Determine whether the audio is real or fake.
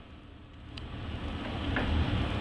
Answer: fake